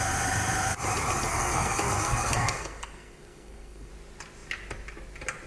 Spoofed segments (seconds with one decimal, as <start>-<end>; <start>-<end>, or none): 1.3-3.9